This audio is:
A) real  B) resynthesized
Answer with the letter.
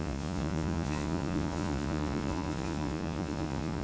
B